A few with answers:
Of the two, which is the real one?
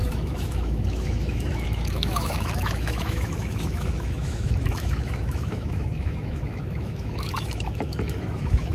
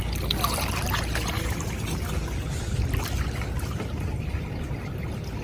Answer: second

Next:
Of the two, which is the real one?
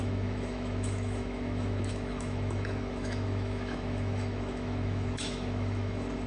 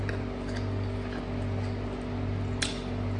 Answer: second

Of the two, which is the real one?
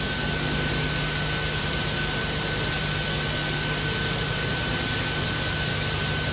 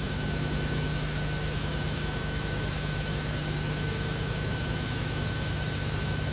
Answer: first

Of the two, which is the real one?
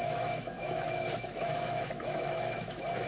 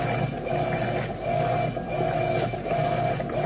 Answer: second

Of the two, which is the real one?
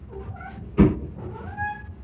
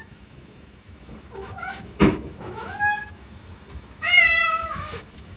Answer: first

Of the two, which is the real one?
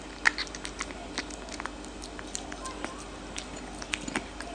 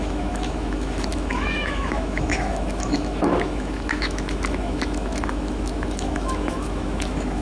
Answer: first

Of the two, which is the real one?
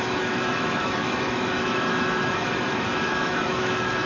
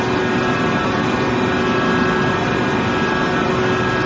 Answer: second